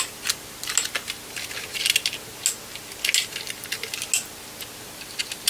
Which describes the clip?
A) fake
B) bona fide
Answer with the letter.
B